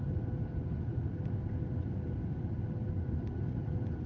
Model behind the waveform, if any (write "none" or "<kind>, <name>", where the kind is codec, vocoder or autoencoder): none